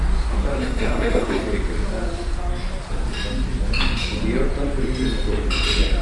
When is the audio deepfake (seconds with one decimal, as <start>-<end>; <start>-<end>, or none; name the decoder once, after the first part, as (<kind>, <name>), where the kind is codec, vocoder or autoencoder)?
0.6-1.4 (codec, SNAC)